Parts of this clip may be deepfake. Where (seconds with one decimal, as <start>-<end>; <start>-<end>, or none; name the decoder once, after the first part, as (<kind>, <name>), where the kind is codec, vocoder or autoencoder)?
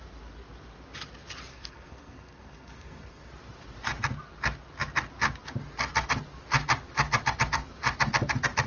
1.5-3.3 (codec, SNAC)